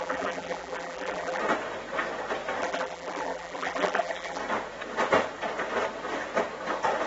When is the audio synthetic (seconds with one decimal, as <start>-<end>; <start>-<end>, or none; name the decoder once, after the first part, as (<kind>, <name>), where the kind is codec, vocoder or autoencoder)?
0.0-1.4 (vocoder, BigVGAN v2); 2.6-4.4